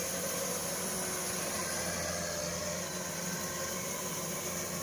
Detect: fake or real real